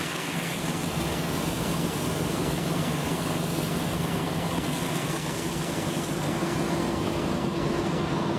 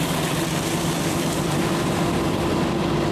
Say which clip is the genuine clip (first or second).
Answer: second